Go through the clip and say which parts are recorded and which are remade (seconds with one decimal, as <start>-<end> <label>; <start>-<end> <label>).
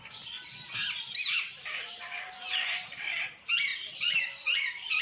0.0-0.8 recorded; 0.8-3.1 remade; 3.1-5.0 recorded